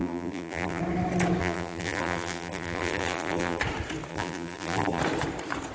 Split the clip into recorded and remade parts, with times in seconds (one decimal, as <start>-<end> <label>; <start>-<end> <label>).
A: 0.0-0.8 remade; 0.8-1.4 recorded; 1.4-3.6 remade; 3.6-4.1 recorded; 4.1-5.0 remade; 5.0-5.7 recorded